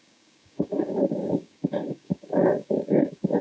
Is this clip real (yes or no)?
no